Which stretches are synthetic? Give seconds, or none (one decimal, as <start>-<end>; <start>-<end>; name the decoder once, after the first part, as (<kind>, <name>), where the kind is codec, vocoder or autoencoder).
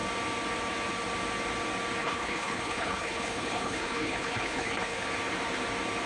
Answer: 2.0-5.1 (codec, HILCodec)